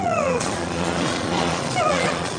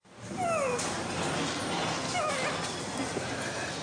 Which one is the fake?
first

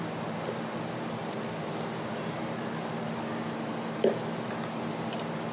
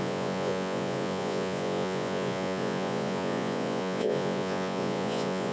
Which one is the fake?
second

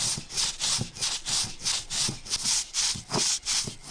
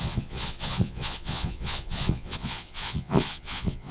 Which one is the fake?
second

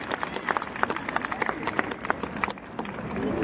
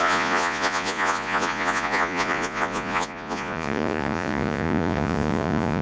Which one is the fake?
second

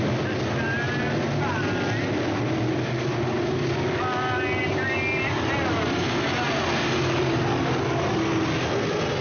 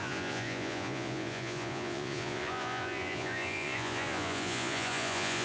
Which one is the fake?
second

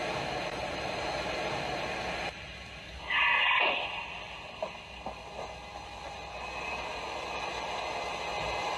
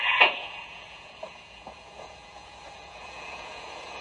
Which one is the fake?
second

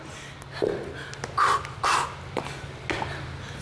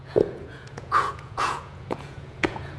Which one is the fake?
second